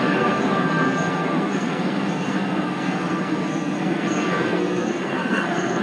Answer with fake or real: fake